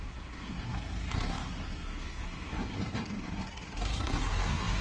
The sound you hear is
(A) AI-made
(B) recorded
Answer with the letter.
A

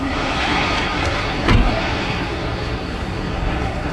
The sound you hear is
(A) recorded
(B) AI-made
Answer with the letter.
B